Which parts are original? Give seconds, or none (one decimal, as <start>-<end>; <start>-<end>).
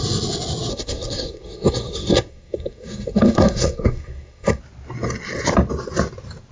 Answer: 0.0-0.7; 4.6-6.5